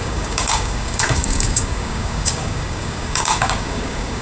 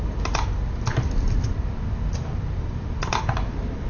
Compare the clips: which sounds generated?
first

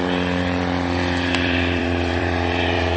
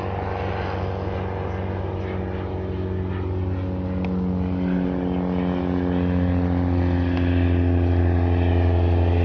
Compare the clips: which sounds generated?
first